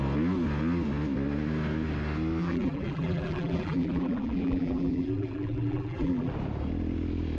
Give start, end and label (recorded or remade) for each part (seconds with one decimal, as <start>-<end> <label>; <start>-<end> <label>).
0.0-2.4 recorded; 2.4-6.3 remade; 6.3-7.4 recorded